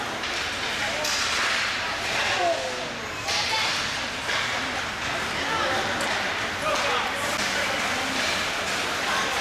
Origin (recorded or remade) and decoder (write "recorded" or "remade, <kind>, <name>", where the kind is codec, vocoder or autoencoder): recorded